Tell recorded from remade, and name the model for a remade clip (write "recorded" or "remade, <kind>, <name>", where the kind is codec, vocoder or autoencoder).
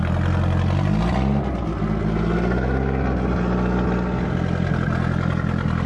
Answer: recorded